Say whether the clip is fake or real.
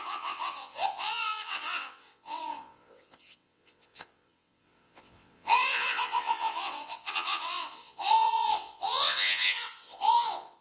fake